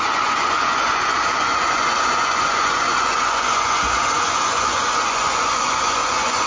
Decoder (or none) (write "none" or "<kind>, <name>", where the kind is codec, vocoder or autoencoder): vocoder, Vocos